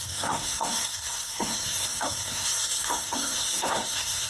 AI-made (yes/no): yes